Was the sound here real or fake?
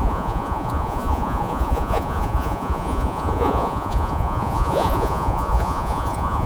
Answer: fake